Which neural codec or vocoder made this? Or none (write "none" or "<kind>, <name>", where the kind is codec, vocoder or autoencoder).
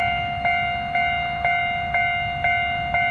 none